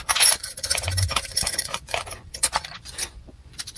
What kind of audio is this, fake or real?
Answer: fake